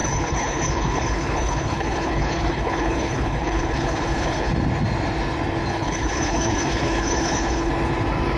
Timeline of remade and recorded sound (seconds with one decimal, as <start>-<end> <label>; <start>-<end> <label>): 0.0-4.5 remade; 4.5-5.7 recorded; 5.7-7.7 remade; 7.7-8.4 recorded